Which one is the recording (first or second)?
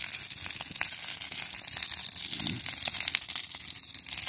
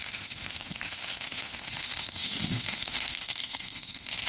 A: first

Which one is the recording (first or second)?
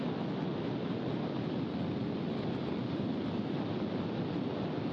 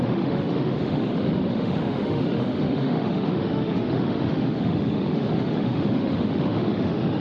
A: first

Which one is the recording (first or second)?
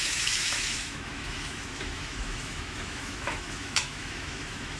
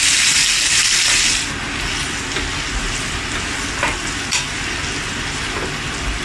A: second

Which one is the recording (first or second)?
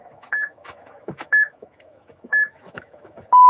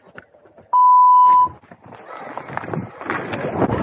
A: second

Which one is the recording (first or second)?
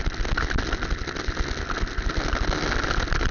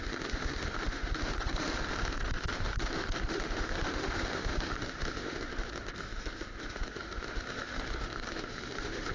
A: first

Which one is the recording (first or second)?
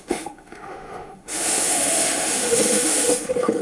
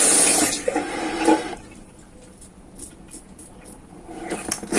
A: second